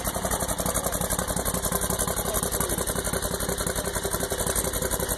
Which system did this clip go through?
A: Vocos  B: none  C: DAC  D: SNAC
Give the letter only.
B